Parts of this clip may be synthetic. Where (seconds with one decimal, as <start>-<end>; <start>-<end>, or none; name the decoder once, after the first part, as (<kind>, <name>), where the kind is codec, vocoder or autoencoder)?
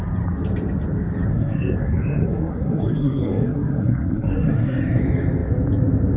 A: 1.3-5.0 (codec, SNAC)